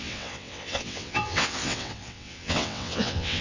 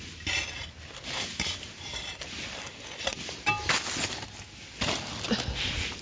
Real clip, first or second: second